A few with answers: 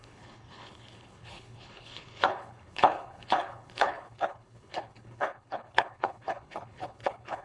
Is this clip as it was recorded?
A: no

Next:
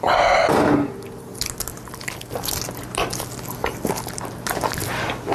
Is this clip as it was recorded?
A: yes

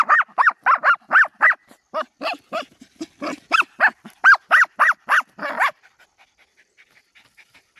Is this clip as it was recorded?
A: yes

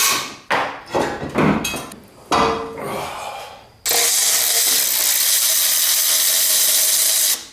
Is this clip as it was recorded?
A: yes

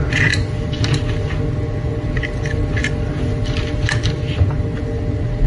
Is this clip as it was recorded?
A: yes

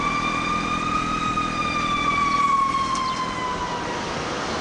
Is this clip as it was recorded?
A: yes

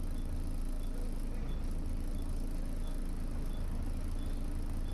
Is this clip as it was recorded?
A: yes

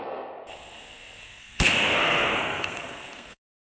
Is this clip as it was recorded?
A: no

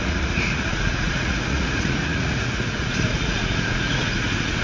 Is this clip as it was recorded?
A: no